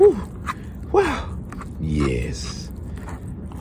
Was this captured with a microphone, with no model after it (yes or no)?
yes